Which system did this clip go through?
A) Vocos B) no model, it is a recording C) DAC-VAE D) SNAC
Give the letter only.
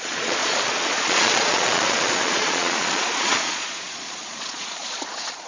A